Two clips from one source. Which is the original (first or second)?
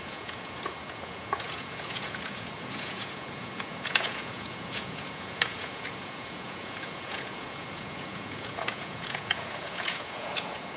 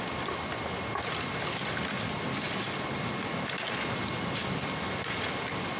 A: second